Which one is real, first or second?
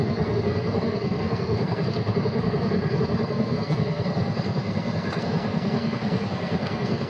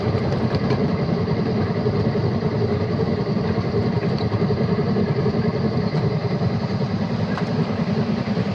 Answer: second